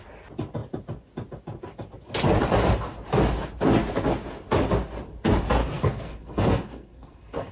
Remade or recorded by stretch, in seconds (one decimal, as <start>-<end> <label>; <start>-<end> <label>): 0.0-5.6 recorded; 5.6-7.5 remade